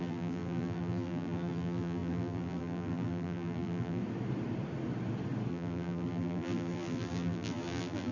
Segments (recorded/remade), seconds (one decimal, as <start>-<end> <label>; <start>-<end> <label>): 0.0-4.0 remade; 4.0-5.5 recorded; 5.5-8.1 remade